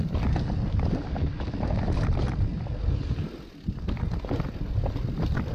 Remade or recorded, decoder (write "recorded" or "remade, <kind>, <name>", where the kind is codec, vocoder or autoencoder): recorded